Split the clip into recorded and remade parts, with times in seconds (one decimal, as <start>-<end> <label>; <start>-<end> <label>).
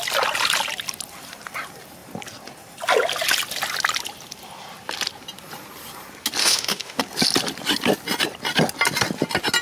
0.0-6.4 recorded; 6.4-7.0 remade; 7.0-9.6 recorded